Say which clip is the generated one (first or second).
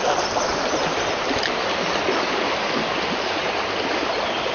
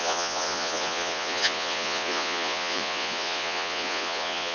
second